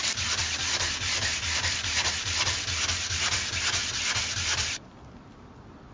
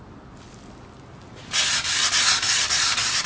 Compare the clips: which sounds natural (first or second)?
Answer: second